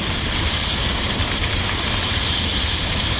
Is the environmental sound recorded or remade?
recorded